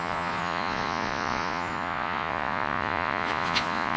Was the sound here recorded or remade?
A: remade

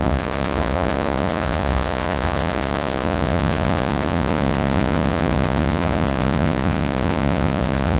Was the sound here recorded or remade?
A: remade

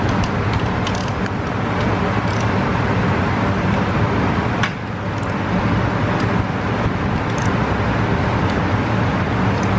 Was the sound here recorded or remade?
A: recorded